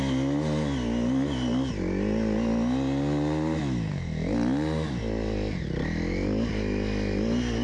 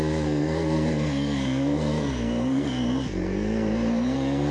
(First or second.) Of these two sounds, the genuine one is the first